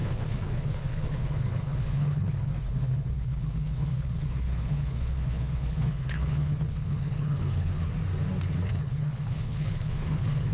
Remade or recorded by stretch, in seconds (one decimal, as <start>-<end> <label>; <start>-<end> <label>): 0.0-7.9 remade; 7.9-8.7 recorded; 8.7-10.5 remade